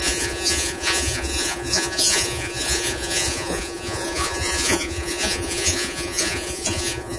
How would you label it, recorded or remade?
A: remade